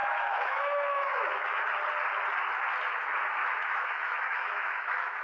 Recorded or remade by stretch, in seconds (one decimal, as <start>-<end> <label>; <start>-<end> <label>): 0.0-1.6 remade; 1.6-3.4 recorded; 3.4-5.2 remade